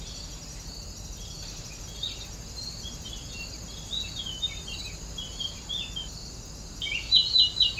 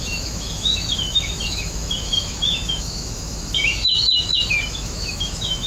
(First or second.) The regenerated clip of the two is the second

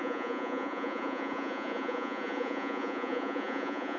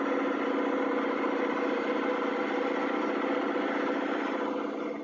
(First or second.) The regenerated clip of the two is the first